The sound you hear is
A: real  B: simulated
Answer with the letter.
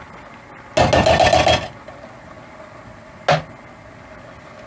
A